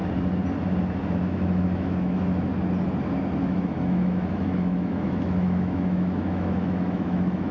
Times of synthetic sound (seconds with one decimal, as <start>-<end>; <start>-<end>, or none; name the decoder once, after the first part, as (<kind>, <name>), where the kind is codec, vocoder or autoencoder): 1.1-2.5 (autoencoder, DAC-VAE); 3.4-7.5